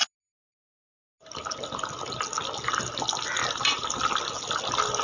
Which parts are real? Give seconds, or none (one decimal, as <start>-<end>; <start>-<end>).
0.0-3.4; 4.2-5.0